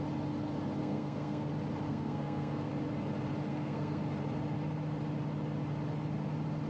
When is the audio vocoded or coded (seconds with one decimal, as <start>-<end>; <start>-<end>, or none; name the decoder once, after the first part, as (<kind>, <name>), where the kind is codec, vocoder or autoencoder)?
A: 0.8-1.5 (codec, SNAC); 1.9-2.7; 3.5-4.0